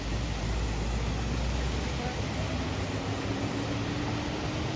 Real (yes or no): yes